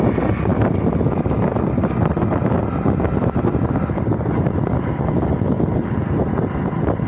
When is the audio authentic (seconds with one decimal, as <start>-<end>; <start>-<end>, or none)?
0.0-7.1